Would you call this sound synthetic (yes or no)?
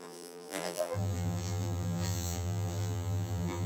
yes